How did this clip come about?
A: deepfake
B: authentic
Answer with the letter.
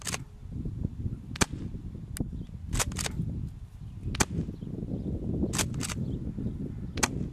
B